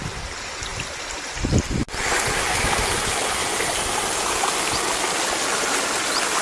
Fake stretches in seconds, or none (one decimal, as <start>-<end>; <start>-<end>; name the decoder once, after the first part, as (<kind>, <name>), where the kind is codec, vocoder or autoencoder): none